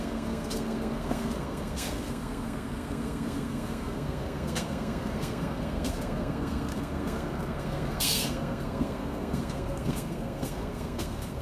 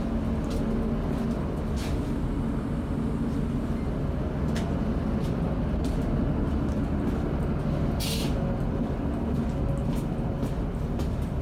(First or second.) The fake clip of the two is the first